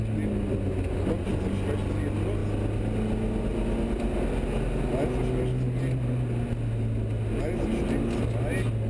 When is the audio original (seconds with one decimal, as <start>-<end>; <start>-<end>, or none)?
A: 0.0-8.9